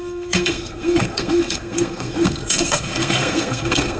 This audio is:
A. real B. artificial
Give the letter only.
B